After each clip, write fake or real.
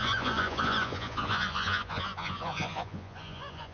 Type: fake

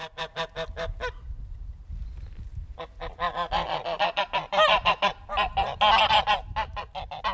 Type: real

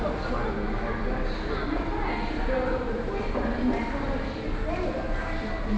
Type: real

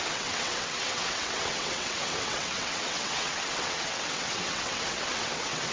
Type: fake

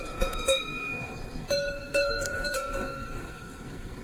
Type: fake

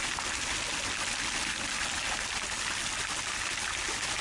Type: real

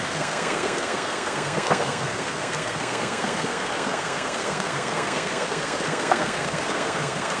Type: fake